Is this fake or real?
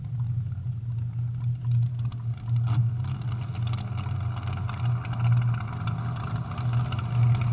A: real